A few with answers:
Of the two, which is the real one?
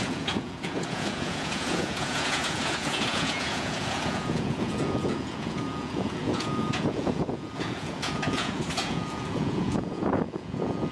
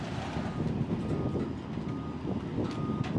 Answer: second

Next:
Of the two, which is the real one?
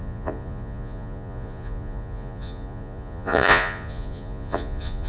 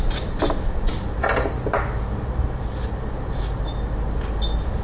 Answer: second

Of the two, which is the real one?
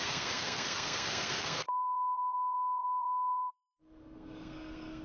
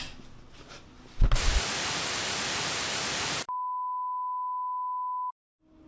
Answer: second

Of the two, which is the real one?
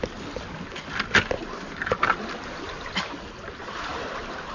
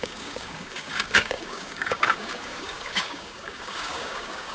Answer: first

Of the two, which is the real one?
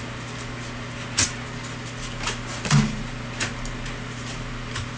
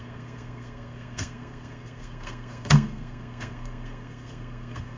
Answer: first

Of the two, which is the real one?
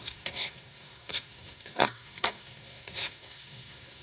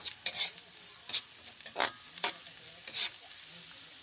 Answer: second